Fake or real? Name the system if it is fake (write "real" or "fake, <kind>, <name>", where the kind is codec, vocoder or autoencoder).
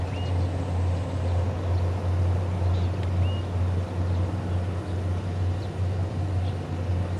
real